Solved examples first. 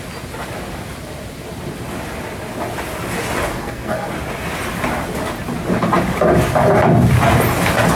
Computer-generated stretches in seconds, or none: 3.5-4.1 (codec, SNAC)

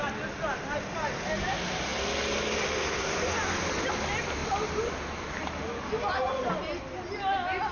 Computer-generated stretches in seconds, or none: none

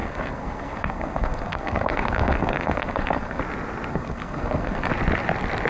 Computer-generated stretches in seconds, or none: 0.0-3.4 (codec, SNAC); 3.9-4.9

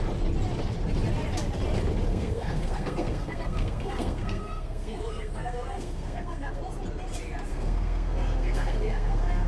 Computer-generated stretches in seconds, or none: 2.1-6.6 (codec, SNAC); 7.5-9.5